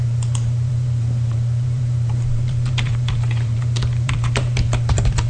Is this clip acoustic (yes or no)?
no